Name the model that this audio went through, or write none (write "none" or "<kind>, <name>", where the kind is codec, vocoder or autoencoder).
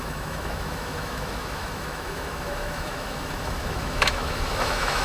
autoencoder, DAC-VAE